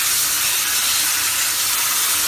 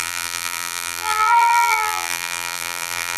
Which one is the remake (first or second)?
second